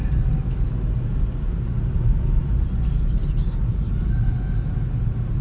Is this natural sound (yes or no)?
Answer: yes